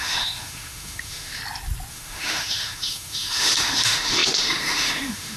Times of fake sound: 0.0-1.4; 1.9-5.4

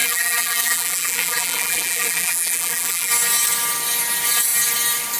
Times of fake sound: 0.0-3.1

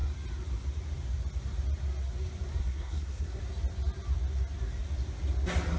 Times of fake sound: 2.6-3.4

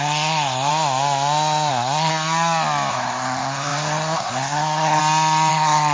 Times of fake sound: 0.0-0.7; 1.7-2.1; 2.9-5.0; 5.5-5.9

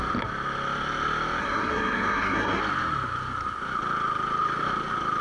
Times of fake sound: 1.4-2.6